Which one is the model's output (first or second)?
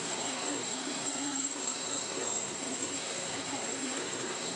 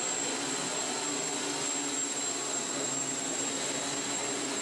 first